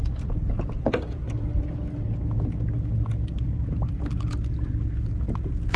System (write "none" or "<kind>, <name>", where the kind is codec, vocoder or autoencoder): none